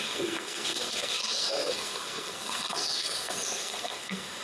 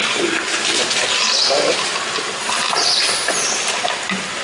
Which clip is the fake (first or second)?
first